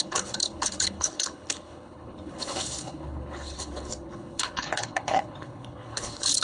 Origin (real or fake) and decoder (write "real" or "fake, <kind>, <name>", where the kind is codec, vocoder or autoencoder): fake, codec, HILCodec